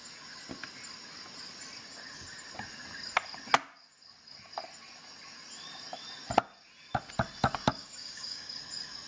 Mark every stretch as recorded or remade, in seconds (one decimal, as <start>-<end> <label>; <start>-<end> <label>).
0.0-7.8 recorded; 7.8-8.6 remade; 8.6-9.1 recorded